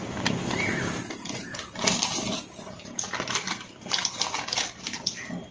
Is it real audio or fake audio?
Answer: real